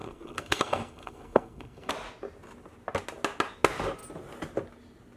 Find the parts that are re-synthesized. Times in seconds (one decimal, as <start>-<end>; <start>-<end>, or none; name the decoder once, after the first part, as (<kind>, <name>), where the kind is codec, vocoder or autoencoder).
0.0-1.9 (codec, SNAC)